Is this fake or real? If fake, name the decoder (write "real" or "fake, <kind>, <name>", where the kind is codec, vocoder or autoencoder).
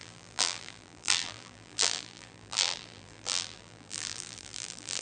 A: fake, vocoder, BigVGAN v2